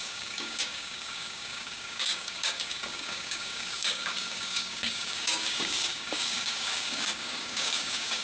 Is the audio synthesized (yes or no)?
yes